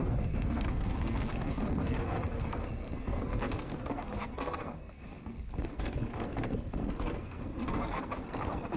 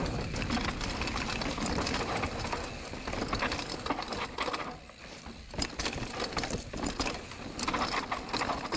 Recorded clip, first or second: second